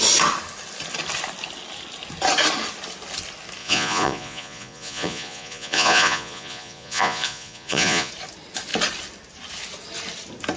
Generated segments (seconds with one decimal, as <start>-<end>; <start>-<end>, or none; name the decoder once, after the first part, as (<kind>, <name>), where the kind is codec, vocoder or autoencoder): 3.6-8.1 (vocoder, Vocos)